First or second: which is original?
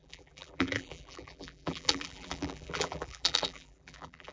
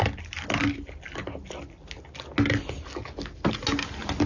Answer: second